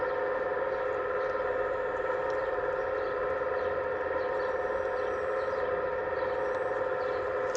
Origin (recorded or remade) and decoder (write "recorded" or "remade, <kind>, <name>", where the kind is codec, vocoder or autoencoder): recorded